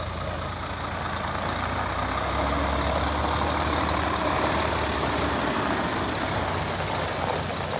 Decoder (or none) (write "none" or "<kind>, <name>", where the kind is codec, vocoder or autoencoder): none